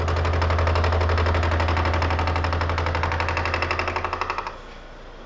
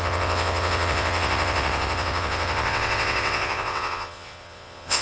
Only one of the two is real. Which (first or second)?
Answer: first